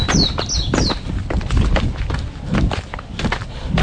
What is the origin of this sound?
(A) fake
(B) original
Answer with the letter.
B